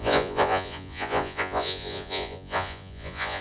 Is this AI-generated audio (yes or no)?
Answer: yes